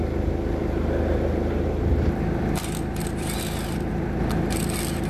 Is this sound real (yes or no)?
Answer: yes